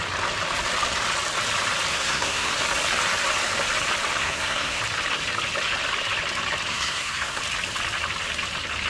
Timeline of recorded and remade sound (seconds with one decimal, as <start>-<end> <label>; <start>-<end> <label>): 0.0-1.9 recorded; 1.9-2.5 remade; 2.5-4.2 recorded; 4.2-4.8 remade; 4.8-6.7 recorded; 6.7-7.4 remade; 7.4-8.9 recorded